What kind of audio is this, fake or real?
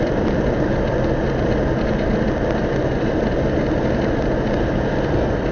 fake